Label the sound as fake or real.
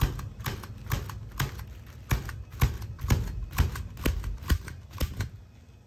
real